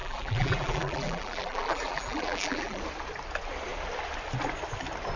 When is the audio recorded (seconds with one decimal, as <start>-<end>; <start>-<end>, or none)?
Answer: 2.8-5.2